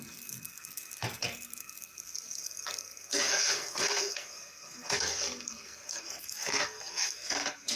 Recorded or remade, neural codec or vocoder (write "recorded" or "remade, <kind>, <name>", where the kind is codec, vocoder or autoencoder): remade, codec, SNAC